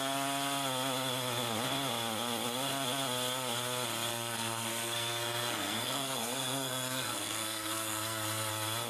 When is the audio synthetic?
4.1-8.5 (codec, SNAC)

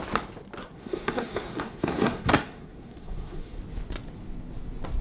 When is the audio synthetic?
0.6-3.6 (codec, SNAC)

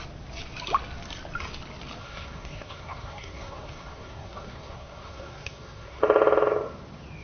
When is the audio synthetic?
2.0-6.0 (codec, SNAC)

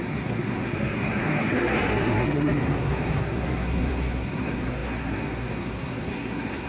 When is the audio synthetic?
0.0-6.7 (codec, SNAC)